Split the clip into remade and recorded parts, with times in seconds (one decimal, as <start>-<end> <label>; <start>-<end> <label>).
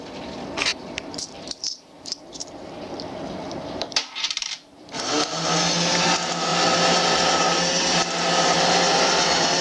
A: 0.0-0.7 recorded; 0.7-5.0 remade; 5.0-9.6 recorded